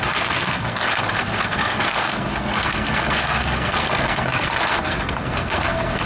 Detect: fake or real fake